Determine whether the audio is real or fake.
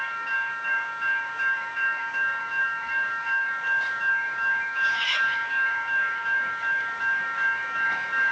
fake